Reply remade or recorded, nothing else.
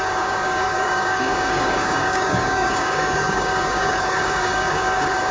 remade